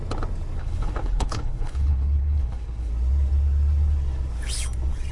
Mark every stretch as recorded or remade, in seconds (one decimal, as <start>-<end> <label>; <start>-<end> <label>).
0.0-0.6 recorded; 0.6-2.9 remade; 2.9-5.1 recorded